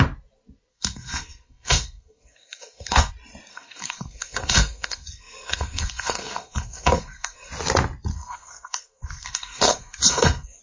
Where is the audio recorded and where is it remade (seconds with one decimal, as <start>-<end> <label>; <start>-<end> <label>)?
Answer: 0.0-0.7 recorded; 0.7-3.1 remade; 3.1-3.5 recorded; 3.5-7.5 remade; 7.5-8.1 recorded; 8.1-10.6 remade